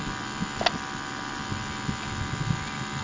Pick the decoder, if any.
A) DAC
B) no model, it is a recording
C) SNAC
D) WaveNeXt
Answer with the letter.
B